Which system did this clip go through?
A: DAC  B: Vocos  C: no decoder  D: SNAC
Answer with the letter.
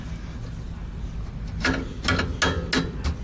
C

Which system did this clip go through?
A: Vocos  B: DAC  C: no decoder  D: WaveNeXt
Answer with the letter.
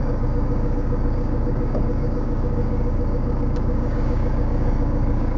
B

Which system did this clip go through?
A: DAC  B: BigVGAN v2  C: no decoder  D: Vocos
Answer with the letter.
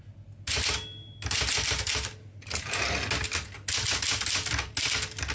C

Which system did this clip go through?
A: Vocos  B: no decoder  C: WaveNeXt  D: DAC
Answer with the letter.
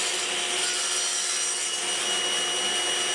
B